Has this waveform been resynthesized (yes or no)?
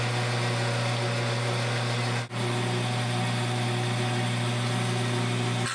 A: no